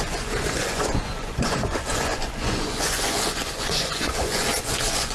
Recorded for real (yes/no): no